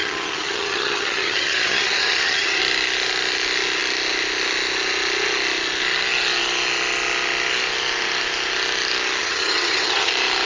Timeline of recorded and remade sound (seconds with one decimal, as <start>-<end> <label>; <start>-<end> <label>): 0.0-2.6 remade; 2.6-9.2 recorded; 9.2-10.1 remade; 10.1-10.5 recorded

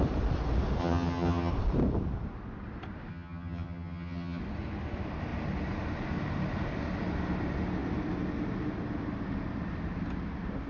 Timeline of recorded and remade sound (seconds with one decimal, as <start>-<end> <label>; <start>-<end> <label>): 0.0-0.8 recorded; 0.8-1.5 remade; 1.5-3.1 recorded; 3.1-4.4 remade; 4.4-10.7 recorded

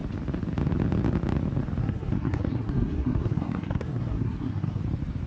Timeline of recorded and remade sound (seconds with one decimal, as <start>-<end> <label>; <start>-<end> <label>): 0.0-1.8 recorded; 1.8-4.8 remade; 4.8-5.3 recorded

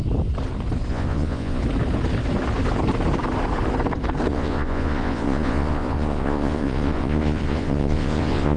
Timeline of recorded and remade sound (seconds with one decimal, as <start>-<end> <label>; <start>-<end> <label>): 0.0-0.9 recorded; 0.9-1.6 remade; 1.6-4.3 recorded; 4.3-8.6 remade